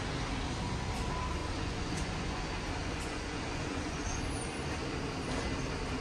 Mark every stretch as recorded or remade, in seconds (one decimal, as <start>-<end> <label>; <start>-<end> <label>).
0.0-1.4 recorded; 1.4-2.4 remade; 2.4-2.8 recorded; 2.8-4.4 remade; 4.4-6.0 recorded